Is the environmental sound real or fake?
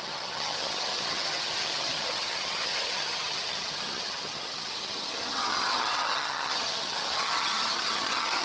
fake